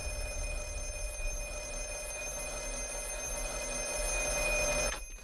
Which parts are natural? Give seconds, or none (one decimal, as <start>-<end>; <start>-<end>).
0.0-5.2

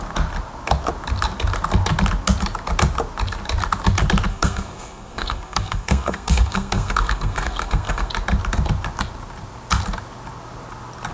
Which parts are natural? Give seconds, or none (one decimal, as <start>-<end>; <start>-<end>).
0.0-4.3; 8.1-11.1